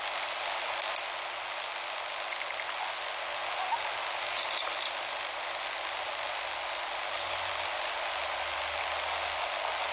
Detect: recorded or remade recorded